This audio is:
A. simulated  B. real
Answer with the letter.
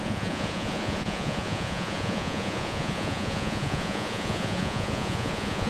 A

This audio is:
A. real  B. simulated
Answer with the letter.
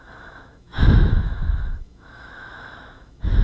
B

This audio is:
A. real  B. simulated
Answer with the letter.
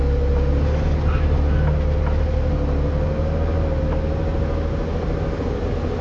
A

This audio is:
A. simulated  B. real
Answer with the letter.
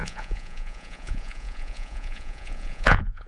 A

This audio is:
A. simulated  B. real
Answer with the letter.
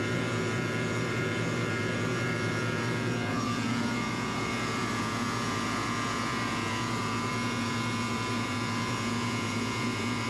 A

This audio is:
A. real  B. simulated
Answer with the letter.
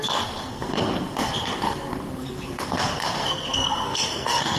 B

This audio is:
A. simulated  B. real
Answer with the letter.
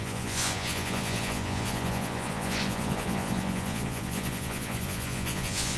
A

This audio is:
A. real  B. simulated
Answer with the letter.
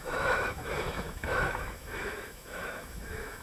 B